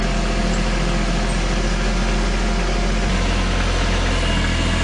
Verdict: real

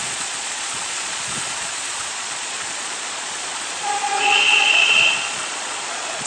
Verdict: fake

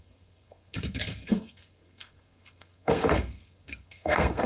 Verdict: fake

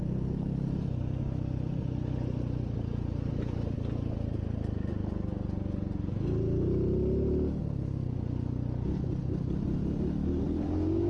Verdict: real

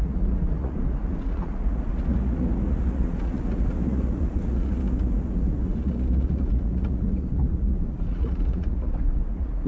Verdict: fake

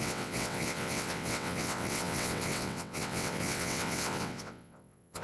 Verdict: fake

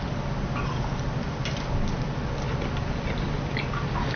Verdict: real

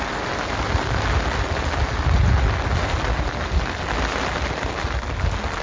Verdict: real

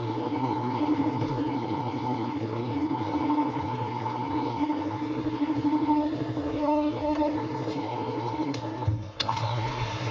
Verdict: fake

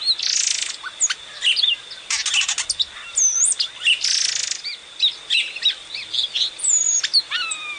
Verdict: real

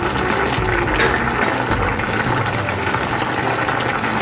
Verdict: real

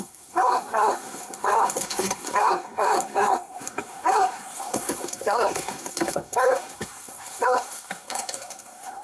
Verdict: fake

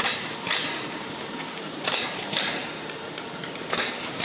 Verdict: fake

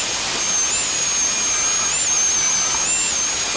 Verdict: real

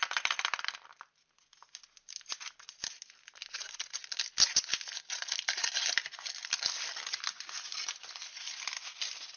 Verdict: real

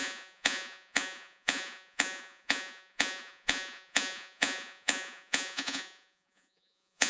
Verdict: fake